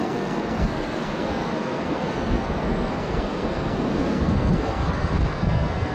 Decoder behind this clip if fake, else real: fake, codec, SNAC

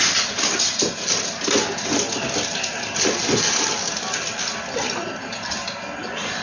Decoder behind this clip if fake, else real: real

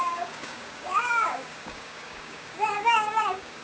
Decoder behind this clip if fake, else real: fake, codec, DAC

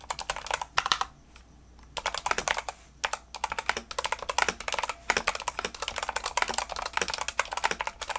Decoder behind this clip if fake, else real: real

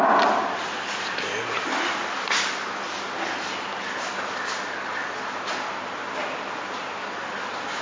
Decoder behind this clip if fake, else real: real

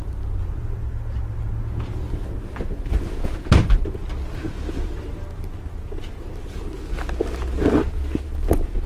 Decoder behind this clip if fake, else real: real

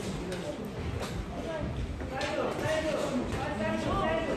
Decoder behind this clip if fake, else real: real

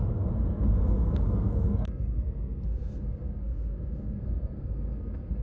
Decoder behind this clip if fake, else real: fake, codec, SNAC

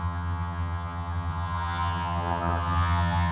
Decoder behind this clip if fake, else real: fake, vocoder, HiFi-GAN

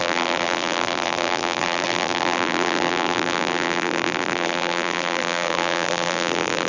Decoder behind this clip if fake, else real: fake, vocoder, BigVGAN v2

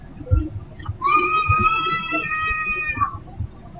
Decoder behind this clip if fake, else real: real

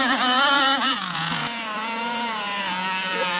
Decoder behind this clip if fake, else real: fake, vocoder, Vocos